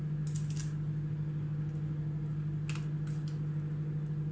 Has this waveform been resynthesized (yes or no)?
no